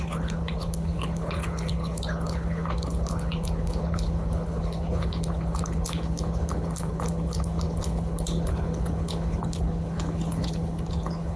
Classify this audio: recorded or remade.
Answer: remade